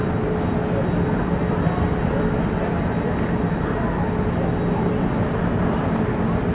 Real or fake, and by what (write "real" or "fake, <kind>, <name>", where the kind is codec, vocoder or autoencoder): real